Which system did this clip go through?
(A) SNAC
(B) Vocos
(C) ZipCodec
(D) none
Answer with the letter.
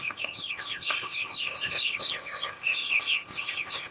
C